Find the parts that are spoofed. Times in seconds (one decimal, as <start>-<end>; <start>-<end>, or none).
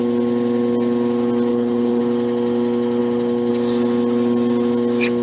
1.5-2.0